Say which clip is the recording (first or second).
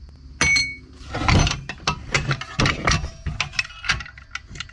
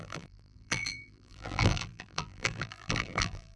first